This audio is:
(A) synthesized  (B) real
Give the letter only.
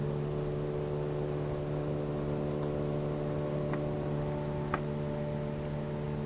B